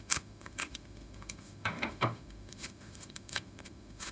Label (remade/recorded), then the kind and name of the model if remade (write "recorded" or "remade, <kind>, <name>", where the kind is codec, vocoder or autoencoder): remade, autoencoder, DAC-VAE